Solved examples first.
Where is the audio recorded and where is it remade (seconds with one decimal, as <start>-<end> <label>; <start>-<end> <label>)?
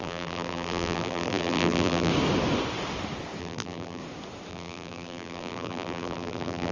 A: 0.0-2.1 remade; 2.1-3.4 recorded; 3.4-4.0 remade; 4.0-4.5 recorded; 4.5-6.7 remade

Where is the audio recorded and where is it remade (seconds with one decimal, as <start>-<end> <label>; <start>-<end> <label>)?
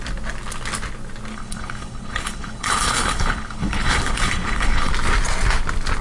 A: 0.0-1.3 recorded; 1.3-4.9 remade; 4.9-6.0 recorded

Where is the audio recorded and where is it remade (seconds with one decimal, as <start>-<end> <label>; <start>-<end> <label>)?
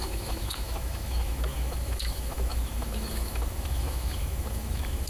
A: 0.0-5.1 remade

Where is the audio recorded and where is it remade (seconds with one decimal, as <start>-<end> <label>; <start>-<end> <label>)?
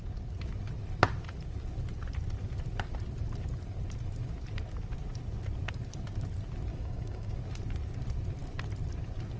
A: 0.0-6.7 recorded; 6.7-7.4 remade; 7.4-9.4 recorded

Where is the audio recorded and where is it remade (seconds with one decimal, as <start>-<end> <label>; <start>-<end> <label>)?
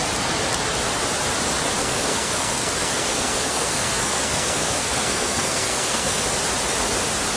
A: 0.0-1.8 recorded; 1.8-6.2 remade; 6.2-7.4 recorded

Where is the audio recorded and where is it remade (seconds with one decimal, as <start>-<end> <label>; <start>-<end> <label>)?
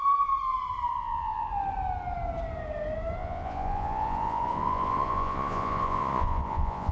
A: 0.0-0.9 recorded; 0.9-1.5 remade; 1.5-3.2 recorded; 3.2-6.9 remade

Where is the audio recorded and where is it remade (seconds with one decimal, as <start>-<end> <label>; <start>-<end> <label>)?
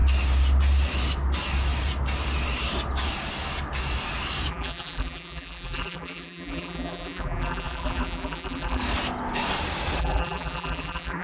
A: 0.0-4.5 recorded; 4.5-8.8 remade; 8.8-10.0 recorded; 10.0-11.2 remade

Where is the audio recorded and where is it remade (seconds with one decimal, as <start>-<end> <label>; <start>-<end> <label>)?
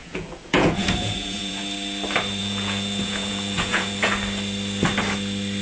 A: 0.0-1.6 remade; 1.6-2.4 recorded; 2.4-4.1 remade; 4.1-5.6 recorded